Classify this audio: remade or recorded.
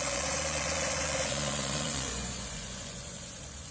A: remade